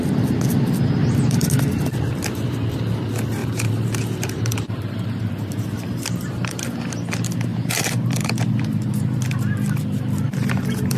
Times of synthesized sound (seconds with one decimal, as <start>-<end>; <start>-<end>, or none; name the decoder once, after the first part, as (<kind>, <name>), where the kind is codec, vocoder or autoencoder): 1.0-1.5 (vocoder, BigVGAN v2); 3.4-6.6; 7.5-9.0; 10.4-11.0